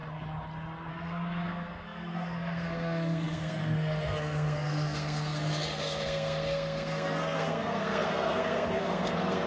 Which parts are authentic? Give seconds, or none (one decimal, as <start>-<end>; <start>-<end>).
0.0-0.9